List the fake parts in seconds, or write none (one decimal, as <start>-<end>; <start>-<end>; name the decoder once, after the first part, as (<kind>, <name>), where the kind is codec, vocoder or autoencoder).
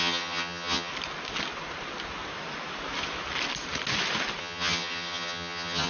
0.0-0.9 (vocoder, HiFi-GAN); 4.4-5.9